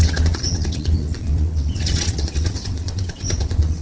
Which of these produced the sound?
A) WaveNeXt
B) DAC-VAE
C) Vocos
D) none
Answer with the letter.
A